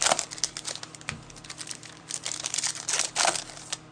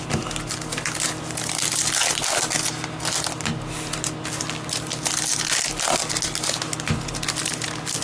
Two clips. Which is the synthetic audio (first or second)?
first